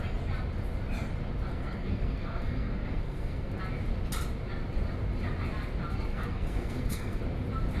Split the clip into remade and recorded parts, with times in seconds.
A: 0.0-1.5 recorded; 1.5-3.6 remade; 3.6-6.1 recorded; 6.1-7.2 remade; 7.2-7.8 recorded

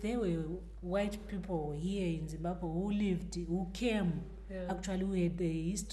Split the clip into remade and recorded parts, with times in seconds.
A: 0.0-5.9 recorded

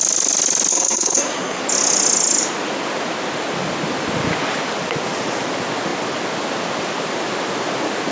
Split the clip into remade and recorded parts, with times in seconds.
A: 0.0-0.7 recorded; 0.7-1.6 remade; 1.6-8.1 recorded

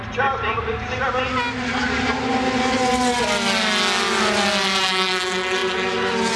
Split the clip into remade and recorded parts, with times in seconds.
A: 0.0-6.4 recorded

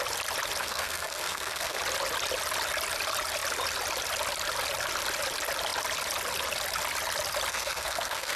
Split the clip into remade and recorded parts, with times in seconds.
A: 0.0-0.6 recorded; 0.6-1.8 remade; 1.8-7.5 recorded; 7.5-8.4 remade

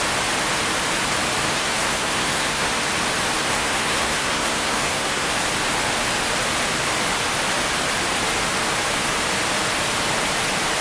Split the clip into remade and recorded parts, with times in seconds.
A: 0.0-1.5 recorded; 1.5-2.7 remade; 2.7-3.4 recorded; 3.4-5.3 remade; 5.3-10.8 recorded